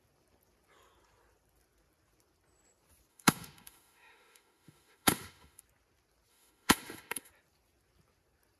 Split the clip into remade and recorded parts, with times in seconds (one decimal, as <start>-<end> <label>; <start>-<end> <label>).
0.0-3.1 recorded; 3.1-5.6 remade; 5.6-6.3 recorded; 6.3-7.3 remade; 7.3-8.6 recorded